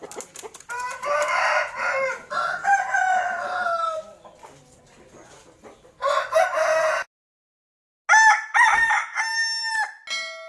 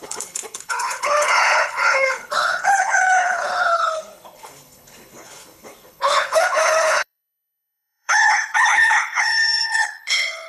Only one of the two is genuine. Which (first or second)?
first